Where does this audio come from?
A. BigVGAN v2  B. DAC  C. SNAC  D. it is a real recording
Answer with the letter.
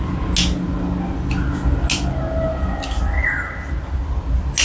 D